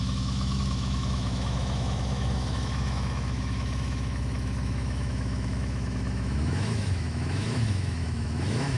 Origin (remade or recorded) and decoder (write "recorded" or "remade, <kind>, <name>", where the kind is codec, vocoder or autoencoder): remade, autoencoder, DAC-VAE